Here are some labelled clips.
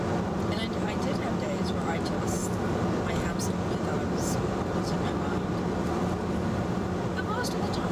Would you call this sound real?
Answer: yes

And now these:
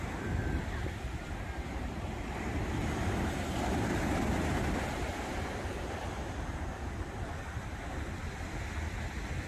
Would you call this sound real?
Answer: yes